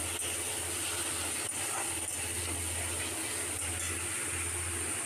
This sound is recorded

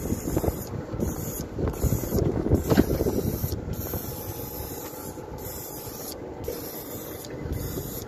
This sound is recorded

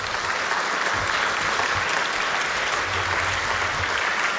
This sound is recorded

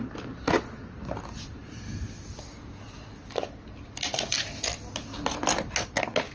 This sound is recorded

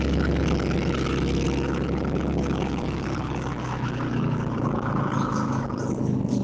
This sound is remade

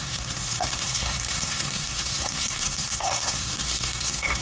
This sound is remade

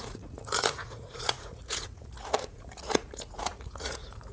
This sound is remade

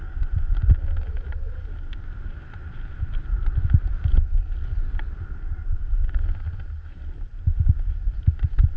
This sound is recorded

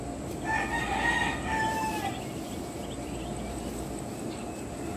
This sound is recorded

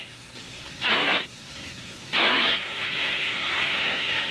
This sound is remade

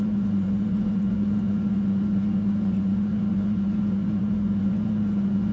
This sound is remade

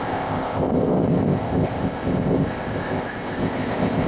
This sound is remade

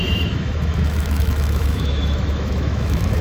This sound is remade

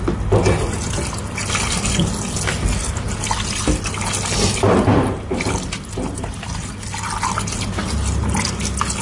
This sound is recorded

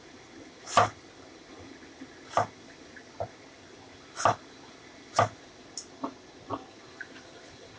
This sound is recorded